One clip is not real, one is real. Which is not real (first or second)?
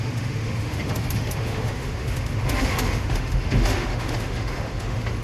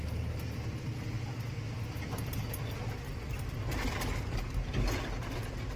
first